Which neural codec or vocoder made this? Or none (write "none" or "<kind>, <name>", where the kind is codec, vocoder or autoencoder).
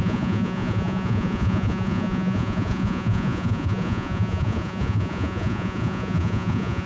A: vocoder, Vocos